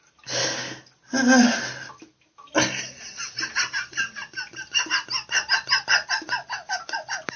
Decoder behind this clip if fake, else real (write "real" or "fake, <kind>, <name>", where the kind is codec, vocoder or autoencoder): real